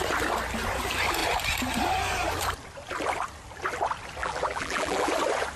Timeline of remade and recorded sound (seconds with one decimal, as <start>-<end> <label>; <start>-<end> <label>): 0.0-4.2 recorded; 4.2-5.1 remade; 5.1-5.6 recorded